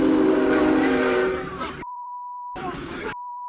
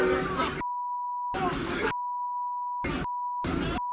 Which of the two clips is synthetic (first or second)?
first